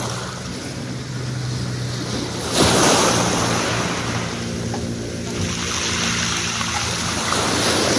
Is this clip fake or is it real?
real